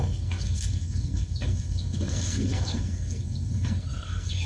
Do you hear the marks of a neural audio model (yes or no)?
yes